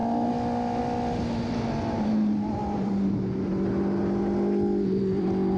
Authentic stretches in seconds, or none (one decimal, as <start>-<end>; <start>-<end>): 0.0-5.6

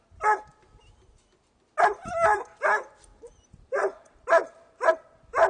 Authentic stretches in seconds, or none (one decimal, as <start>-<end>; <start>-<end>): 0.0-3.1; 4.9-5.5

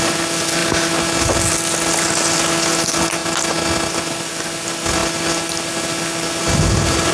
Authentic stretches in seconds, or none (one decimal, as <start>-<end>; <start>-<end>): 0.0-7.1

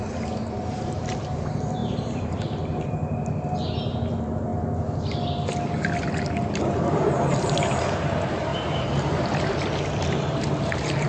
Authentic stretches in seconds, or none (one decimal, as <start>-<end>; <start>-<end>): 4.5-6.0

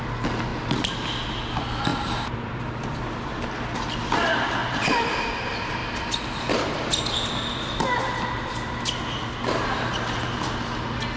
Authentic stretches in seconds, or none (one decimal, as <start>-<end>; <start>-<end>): 0.0-1.9; 2.6-4.6; 5.2-11.2

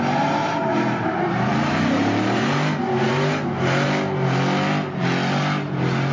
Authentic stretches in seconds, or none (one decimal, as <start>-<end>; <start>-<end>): 0.0-0.4; 3.9-6.1

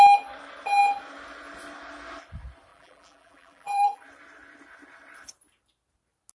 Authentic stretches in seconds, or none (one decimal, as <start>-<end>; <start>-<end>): 0.0-2.7; 4.0-6.3